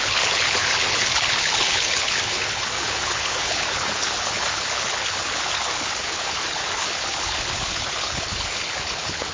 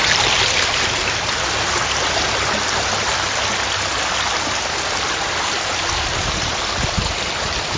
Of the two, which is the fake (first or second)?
first